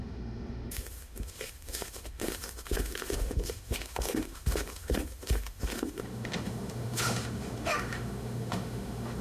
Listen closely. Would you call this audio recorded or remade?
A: remade